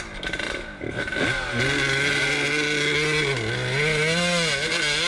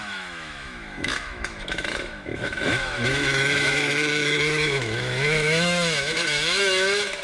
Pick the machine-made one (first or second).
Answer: second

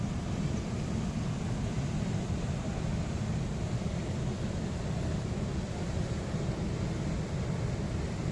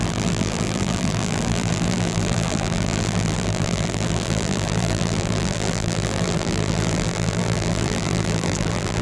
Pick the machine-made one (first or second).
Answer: second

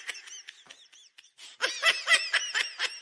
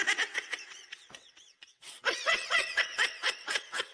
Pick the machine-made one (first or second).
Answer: second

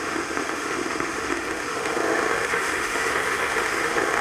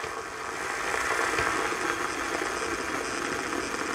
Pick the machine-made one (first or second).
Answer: first